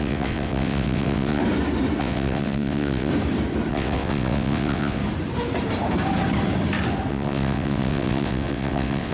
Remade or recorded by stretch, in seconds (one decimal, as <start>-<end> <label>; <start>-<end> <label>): 0.0-1.4 remade; 1.4-2.0 recorded; 2.0-3.1 remade; 3.1-3.7 recorded; 3.7-5.0 remade; 5.0-7.1 recorded; 7.1-9.1 remade